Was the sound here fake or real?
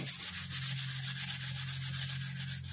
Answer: real